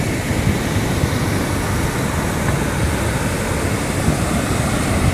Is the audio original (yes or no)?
yes